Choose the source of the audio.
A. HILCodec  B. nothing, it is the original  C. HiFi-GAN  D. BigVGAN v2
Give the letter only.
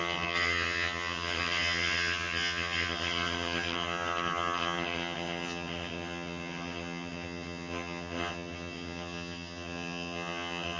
C